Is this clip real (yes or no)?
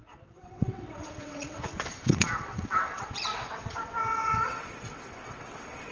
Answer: no